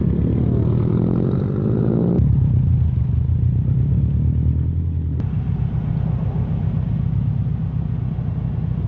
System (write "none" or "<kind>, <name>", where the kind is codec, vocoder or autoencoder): none